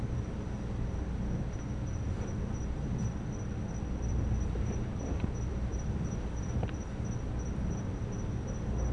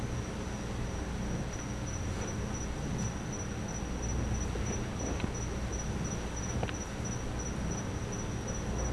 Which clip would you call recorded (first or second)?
second